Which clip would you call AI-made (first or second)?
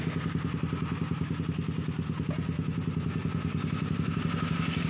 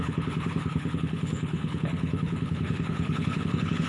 second